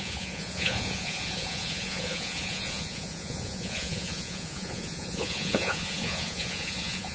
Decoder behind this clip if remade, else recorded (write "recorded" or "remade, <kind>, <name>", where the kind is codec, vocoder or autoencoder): remade, vocoder, Vocos